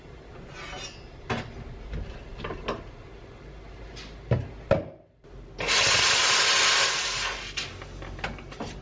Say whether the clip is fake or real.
real